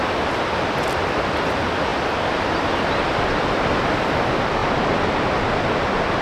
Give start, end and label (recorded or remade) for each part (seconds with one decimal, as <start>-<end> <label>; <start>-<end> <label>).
0.0-6.2 recorded